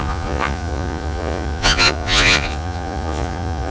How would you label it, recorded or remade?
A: remade